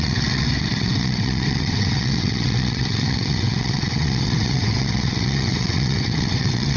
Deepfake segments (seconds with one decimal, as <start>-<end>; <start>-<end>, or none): 0.0-6.8